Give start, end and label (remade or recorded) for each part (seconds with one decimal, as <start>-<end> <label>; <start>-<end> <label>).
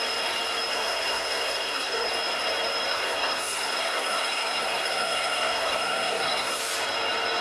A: 0.0-0.7 recorded; 0.7-2.1 remade; 2.1-2.9 recorded; 2.9-6.6 remade; 6.6-7.4 recorded